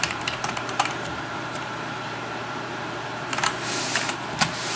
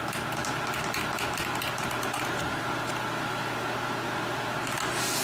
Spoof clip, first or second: first